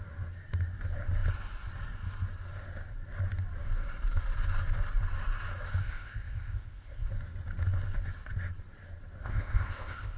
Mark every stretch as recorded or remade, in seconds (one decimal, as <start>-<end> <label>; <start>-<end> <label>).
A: 0.0-5.8 recorded; 5.8-7.1 remade; 7.1-9.2 recorded; 9.2-10.2 remade